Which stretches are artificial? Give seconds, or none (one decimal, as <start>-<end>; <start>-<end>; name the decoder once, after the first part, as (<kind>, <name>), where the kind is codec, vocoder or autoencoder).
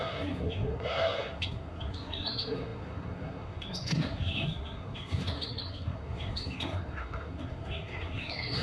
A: 0.0-8.6 (codec, SNAC)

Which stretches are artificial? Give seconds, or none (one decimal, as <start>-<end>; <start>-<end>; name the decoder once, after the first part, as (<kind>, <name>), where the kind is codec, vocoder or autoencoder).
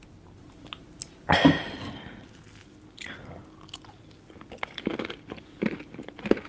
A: none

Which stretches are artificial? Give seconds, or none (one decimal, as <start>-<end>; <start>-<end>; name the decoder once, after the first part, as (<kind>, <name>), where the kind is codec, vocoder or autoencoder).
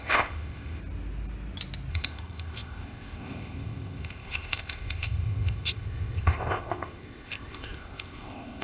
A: 0.0-0.8 (codec, ZipCodec); 1.9-8.6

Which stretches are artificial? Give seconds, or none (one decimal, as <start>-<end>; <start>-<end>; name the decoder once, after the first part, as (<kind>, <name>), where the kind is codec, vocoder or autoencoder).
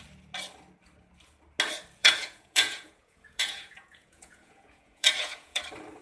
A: 2.0-5.6 (vocoder, Vocos)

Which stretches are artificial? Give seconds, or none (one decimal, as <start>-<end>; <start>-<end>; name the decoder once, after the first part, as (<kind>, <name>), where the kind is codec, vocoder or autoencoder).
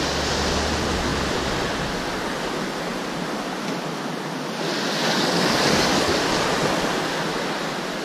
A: 5.0-6.3 (codec, DAC)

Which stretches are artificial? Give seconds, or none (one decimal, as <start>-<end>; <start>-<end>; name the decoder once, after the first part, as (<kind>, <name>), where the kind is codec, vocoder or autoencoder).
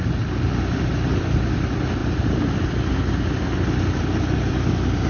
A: none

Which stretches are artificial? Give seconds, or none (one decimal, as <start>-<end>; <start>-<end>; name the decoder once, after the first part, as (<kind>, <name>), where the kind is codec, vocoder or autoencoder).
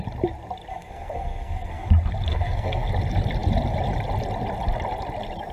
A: 0.7-1.9 (codec, SNAC); 2.3-2.9